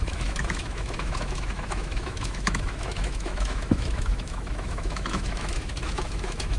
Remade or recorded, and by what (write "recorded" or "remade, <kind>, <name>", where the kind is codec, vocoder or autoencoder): remade, autoencoder, DAC-VAE